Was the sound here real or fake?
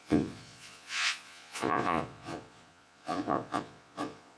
fake